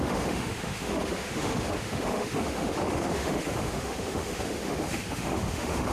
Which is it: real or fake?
fake